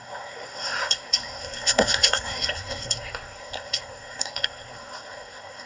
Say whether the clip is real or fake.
fake